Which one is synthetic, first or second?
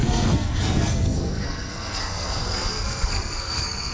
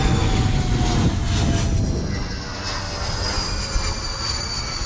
first